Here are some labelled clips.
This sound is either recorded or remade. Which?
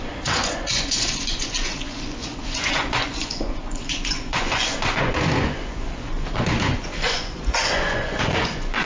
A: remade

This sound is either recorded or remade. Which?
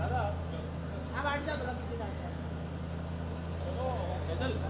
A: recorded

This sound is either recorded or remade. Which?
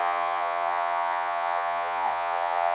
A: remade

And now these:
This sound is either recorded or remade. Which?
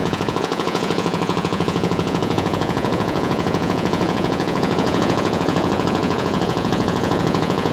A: remade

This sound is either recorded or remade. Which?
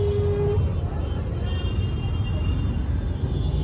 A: recorded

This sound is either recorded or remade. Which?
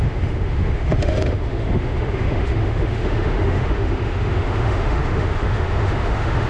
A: remade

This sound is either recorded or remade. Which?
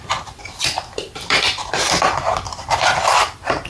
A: remade